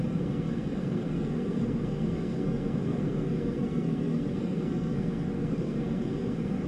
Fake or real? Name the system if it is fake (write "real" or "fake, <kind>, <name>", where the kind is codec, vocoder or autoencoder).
fake, codec, SNAC